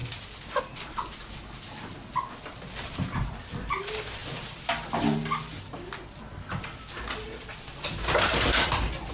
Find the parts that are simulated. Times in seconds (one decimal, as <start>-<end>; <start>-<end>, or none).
none